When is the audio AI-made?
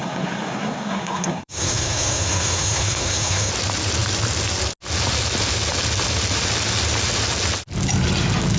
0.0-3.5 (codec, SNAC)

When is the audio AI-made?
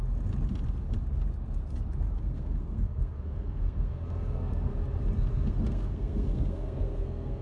2.2-4.7 (codec, SNAC); 5.3-7.4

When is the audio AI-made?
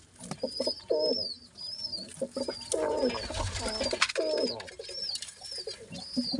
none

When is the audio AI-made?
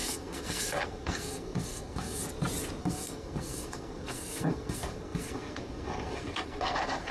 0.0-2.2 (codec, SNAC); 2.8-7.1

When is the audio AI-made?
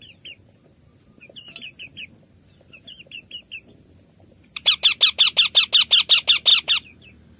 none